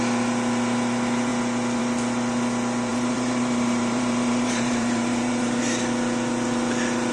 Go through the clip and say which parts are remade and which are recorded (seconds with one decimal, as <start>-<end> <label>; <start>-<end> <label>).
0.0-2.9 recorded; 2.9-5.6 remade; 5.6-7.1 recorded